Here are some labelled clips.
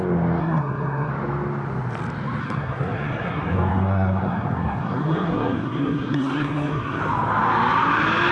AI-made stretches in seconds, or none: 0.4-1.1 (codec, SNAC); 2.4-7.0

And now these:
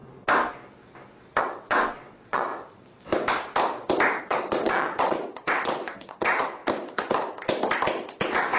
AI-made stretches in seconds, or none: 1.4-2.5 (vocoder, WaveNeXt); 4.2-6.6; 8.2-8.6

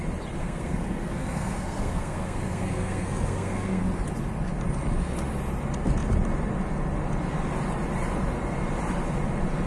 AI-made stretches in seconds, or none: 0.4-3.8 (codec, SNAC)

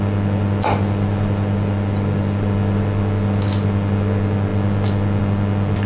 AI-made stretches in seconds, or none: none